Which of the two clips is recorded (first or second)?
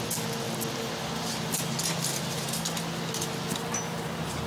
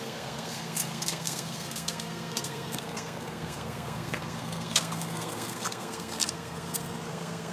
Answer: first